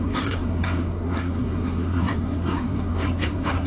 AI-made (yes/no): yes